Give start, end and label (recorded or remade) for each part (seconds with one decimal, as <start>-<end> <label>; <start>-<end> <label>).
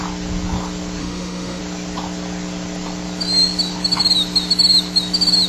0.0-1.0 recorded; 1.0-1.6 remade; 1.6-5.5 recorded